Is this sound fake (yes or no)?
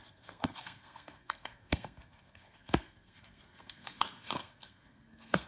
yes